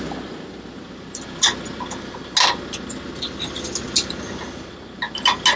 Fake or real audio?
real